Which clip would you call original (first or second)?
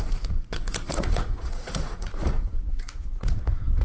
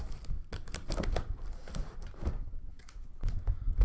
second